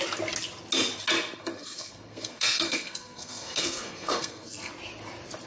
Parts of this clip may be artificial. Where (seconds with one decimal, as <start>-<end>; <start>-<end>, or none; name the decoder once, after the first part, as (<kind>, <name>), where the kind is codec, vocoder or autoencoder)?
1.4-4.7 (codec, SNAC)